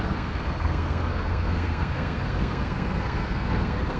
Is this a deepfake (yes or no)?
yes